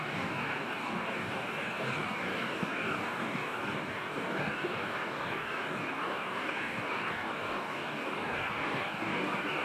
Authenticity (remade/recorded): remade